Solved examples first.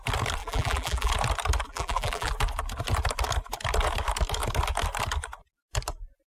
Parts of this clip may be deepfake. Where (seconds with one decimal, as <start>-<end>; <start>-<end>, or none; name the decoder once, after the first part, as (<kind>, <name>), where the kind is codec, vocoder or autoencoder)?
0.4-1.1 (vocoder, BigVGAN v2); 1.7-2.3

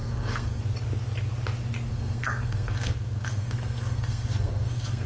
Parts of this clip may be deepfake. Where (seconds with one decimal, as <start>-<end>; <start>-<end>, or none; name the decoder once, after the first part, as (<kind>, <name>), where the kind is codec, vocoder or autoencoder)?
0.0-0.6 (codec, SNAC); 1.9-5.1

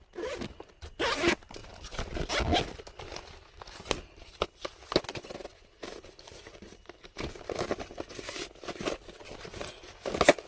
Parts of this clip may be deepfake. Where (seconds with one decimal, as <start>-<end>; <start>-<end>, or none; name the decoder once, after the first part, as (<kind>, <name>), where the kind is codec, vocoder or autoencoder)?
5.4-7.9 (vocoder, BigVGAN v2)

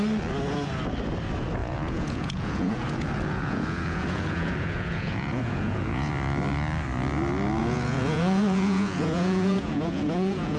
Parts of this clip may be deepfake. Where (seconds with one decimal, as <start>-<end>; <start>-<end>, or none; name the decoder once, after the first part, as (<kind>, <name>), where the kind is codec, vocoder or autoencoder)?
1.6-6.1 (vocoder, Vocos); 7.6-10.6